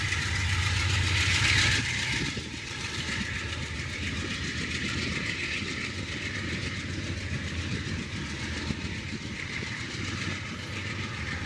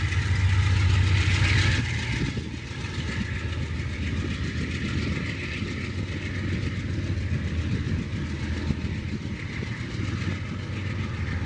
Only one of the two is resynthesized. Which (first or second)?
first